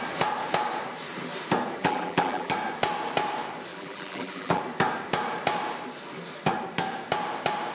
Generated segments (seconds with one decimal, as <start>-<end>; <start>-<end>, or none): 1.8-2.5; 3.7-4.6